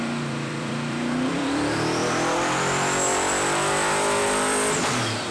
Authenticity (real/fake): fake